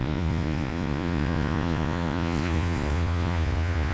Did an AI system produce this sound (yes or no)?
yes